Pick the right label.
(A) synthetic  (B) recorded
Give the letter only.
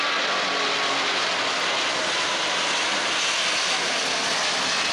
B